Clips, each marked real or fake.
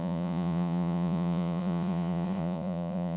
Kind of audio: fake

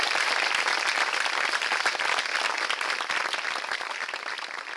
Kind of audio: real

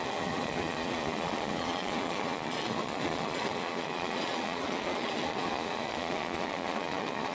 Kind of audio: fake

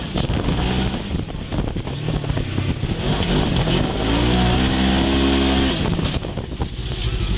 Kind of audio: real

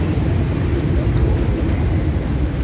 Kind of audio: real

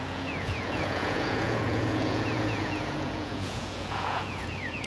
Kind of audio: fake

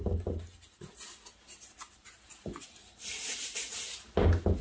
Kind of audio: real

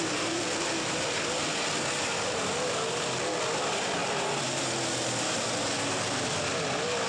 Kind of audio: real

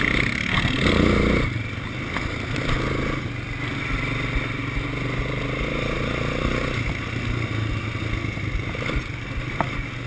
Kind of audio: real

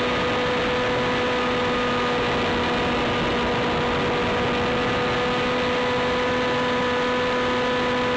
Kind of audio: real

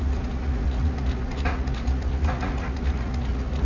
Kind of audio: fake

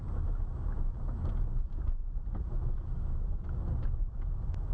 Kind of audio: real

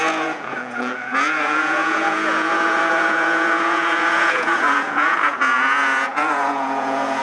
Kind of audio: fake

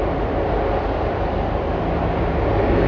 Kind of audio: real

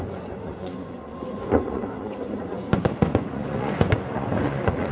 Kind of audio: fake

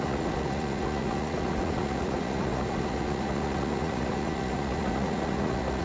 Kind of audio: fake